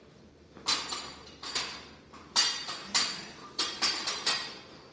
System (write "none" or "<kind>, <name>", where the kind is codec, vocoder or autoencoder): vocoder, BigVGAN v2